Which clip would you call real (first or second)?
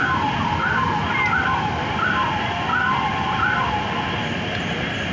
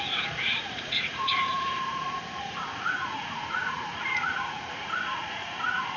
first